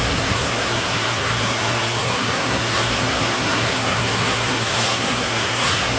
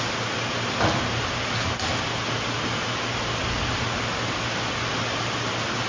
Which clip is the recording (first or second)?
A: second